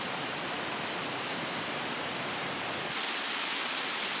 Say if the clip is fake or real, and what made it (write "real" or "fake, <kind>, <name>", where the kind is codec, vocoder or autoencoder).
real